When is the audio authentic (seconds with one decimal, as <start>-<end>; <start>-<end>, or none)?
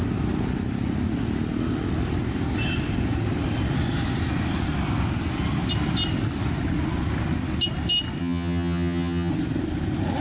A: 0.0-8.2; 9.3-10.2